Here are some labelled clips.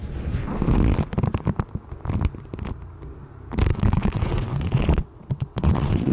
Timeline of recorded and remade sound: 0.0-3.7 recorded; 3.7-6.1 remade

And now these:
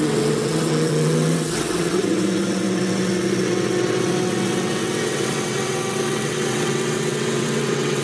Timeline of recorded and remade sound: 0.0-8.0 remade

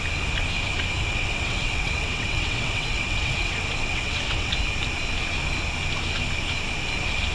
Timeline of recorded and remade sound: 0.0-1.1 recorded; 1.1-4.5 remade; 4.5-7.3 recorded

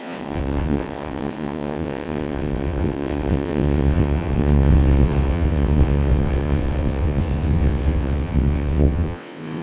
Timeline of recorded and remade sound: 0.0-9.6 remade